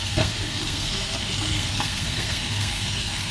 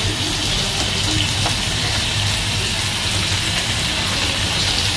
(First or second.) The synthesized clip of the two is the first